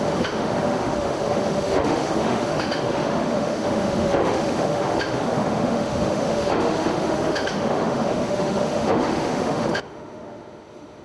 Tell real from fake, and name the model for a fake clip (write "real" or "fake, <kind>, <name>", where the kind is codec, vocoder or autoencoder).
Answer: fake, autoencoder, DAC-VAE